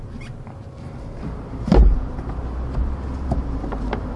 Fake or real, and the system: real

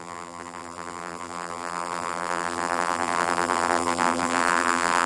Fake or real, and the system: fake, vocoder, BigVGAN v2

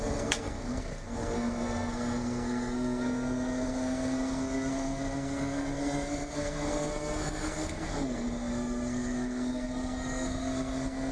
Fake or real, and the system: fake, codec, SNAC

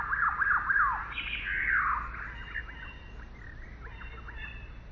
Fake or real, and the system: real